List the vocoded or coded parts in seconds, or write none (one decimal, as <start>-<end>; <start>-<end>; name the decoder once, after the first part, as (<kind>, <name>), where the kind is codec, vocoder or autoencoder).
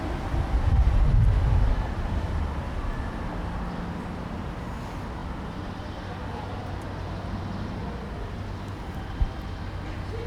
none